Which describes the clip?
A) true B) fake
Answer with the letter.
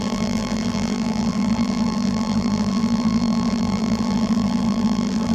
B